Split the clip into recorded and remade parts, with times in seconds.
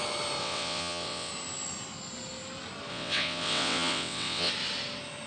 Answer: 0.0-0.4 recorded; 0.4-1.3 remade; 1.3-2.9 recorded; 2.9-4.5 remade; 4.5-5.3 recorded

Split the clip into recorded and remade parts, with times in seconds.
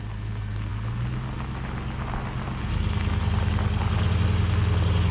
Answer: 0.0-5.1 recorded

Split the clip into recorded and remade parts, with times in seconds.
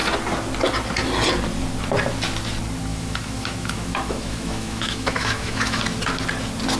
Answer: 0.0-2.9 recorded; 2.9-5.8 remade; 5.8-6.8 recorded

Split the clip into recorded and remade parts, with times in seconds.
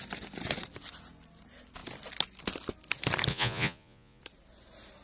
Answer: 0.0-3.3 recorded; 3.3-4.2 remade; 4.2-5.0 recorded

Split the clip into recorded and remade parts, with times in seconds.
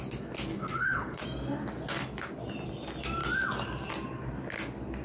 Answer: 0.0-0.5 recorded; 0.5-1.2 remade; 1.2-5.0 recorded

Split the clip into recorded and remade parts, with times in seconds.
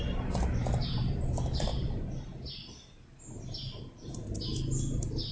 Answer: 0.0-5.3 recorded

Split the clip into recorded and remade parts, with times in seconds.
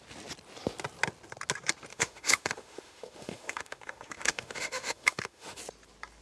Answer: 0.0-1.9 recorded; 1.9-5.6 remade; 5.6-6.2 recorded